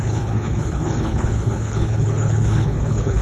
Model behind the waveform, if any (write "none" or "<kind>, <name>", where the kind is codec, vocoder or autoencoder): codec, HILCodec